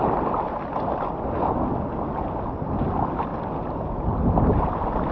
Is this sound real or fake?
real